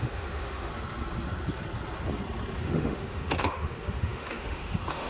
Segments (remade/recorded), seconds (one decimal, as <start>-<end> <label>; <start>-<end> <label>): 0.0-0.7 remade; 0.7-2.6 recorded; 2.6-5.1 remade